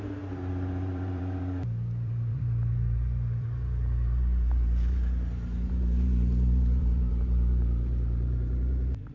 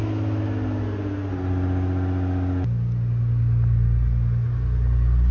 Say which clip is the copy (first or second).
first